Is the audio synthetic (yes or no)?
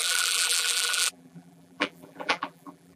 yes